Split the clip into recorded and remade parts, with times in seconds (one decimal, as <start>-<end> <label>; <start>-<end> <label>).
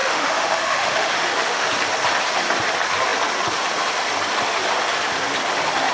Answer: 0.0-1.7 remade; 1.7-5.9 recorded